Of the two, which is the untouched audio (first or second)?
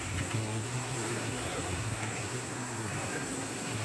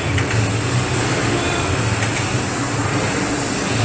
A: second